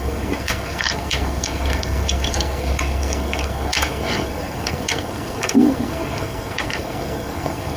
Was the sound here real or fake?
fake